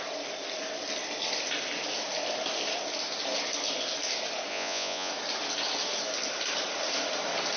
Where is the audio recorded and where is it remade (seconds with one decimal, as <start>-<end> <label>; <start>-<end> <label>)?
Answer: 0.0-4.5 recorded; 4.5-5.1 remade; 5.1-7.6 recorded